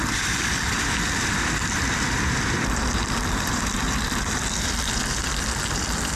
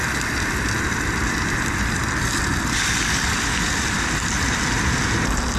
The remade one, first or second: first